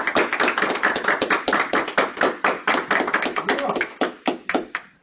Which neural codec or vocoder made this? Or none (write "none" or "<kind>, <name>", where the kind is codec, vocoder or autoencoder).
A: none